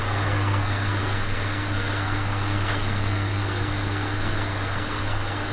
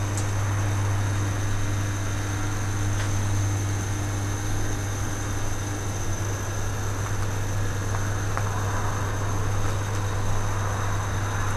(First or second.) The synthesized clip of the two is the first